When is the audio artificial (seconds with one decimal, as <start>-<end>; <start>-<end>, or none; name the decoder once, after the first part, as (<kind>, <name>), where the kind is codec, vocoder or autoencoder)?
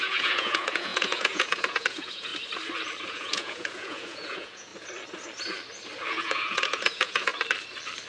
0.0-2.3 (vocoder, Vocos); 3.1-4.7; 6.1-7.3